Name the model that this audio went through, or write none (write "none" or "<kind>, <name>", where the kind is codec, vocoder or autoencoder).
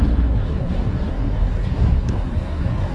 codec, SNAC